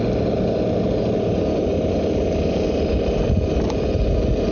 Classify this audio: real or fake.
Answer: real